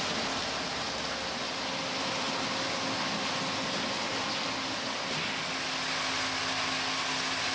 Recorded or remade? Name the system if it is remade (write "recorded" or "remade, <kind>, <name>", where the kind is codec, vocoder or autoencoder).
recorded